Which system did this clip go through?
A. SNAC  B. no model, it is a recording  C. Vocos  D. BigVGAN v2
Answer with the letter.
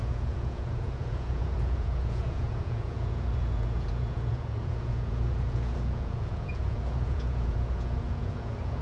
C